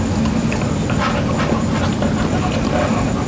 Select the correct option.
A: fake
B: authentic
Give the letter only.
B